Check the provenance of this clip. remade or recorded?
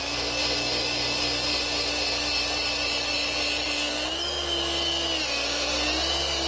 recorded